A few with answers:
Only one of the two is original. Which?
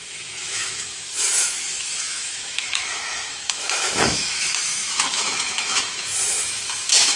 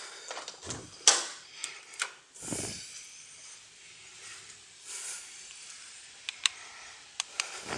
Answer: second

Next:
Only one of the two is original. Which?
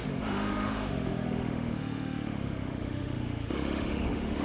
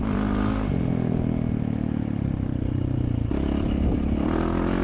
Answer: second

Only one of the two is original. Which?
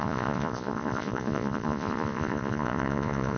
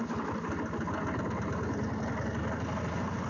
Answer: second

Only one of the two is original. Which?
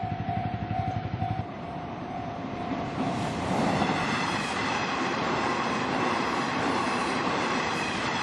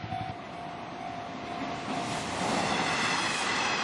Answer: second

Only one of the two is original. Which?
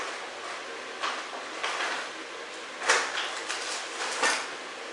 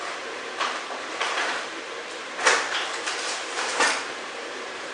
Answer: first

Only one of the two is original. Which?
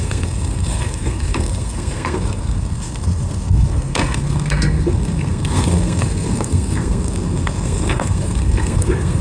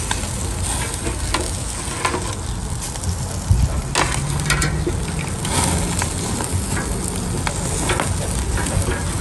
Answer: second